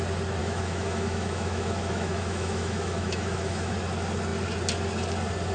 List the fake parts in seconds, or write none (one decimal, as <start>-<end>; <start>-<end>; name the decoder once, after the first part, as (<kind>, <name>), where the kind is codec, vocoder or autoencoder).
0.4-3.7 (autoencoder, DAC-VAE)